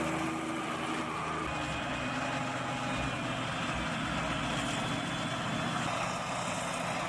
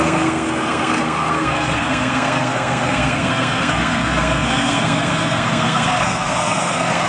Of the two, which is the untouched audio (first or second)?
first